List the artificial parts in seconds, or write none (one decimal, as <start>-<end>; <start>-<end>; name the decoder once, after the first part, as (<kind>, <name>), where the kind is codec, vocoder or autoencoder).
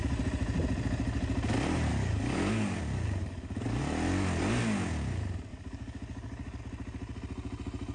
1.9-2.8 (codec, DAC); 3.2-3.8; 5.5-6.6